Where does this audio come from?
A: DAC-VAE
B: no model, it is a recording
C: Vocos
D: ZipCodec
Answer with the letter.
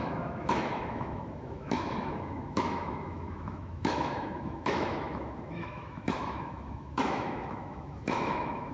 A